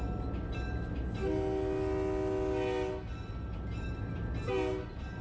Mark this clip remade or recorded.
recorded